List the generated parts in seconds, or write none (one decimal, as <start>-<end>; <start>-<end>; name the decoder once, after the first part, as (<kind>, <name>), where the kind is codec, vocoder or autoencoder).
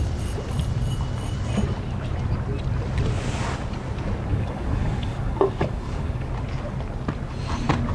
4.3-6.3 (codec, DAC)